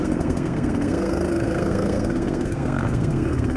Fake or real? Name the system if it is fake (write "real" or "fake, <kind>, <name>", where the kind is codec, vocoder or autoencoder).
fake, codec, SNAC